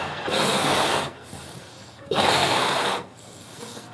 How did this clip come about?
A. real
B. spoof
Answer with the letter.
B